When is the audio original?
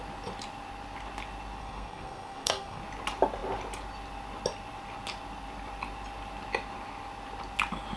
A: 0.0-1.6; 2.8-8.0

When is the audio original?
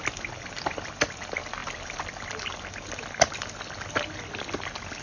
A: 0.0-5.0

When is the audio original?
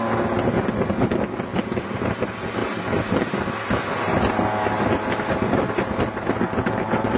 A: 0.0-1.5; 2.1-7.2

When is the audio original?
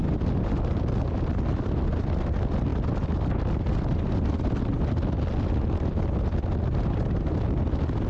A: 0.0-8.1